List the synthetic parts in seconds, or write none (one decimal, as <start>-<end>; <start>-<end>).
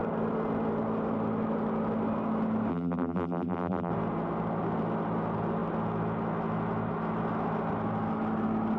2.7-3.9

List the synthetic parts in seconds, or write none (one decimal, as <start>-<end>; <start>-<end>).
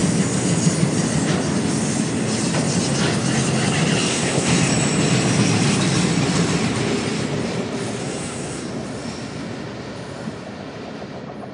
4.1-4.7; 8.0-8.7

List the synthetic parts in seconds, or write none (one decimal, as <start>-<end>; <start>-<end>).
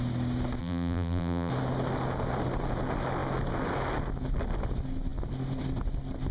0.6-1.5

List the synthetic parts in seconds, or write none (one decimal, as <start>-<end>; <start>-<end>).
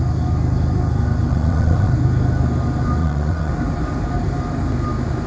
1.3-1.9; 3.0-3.5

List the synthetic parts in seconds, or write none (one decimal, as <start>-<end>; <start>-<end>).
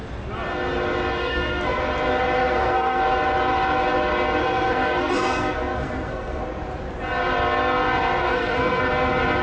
1.2-1.8; 2.4-3.0; 4.4-6.4; 8.2-8.8